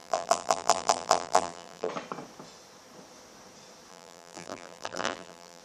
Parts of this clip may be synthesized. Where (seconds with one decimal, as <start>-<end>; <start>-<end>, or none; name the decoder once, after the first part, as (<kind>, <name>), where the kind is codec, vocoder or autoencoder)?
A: 0.0-1.9 (vocoder, BigVGAN v2); 3.9-5.6